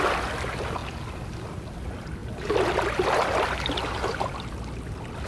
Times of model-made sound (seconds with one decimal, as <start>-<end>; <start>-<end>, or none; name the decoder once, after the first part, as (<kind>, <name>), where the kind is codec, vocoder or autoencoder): none